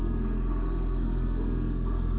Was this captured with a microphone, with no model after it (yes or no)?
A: no